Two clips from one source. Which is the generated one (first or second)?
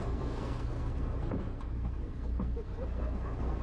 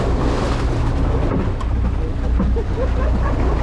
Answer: first